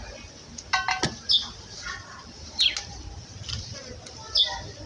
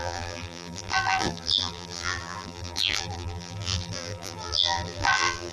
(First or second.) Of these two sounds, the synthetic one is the second